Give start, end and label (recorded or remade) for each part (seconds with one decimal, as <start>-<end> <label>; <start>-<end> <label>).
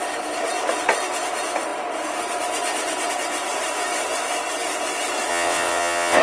0.0-5.3 recorded; 5.3-6.2 remade